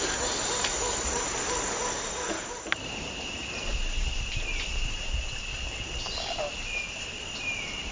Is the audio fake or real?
fake